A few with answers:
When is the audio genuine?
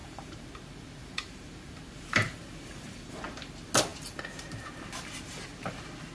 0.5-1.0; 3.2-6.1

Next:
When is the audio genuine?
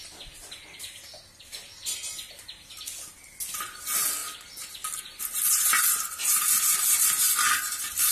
0.0-8.1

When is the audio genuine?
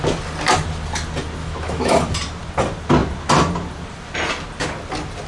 0.0-1.4; 2.0-5.3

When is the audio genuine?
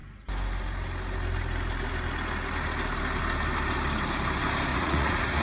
0.0-4.7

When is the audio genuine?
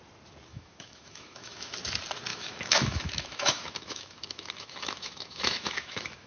0.0-0.5; 1.7-2.3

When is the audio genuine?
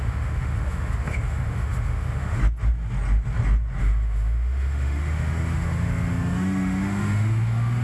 2.4-3.8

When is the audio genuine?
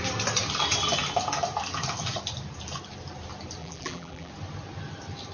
0.0-3.6; 4.3-5.3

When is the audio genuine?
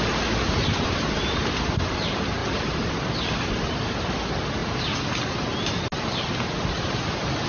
0.0-2.4; 2.9-4.6; 5.3-7.5